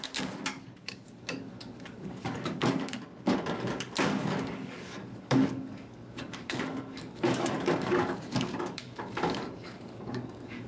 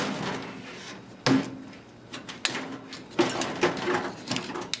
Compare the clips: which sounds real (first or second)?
second